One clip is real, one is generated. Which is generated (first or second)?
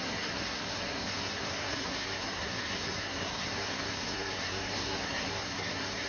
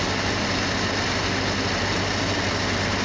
first